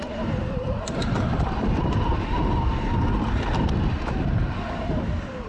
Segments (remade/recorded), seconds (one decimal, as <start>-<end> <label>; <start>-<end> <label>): 0.0-5.5 remade